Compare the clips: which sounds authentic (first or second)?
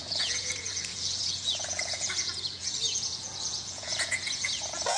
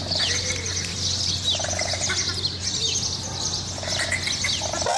second